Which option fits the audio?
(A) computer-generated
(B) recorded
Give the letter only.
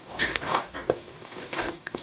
A